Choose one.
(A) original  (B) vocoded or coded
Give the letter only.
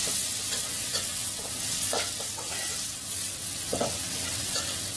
B